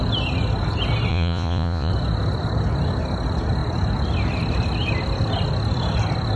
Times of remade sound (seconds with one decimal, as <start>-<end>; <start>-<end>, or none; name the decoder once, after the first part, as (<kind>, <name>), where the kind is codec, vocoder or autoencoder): 1.1-1.9 (vocoder, Vocos)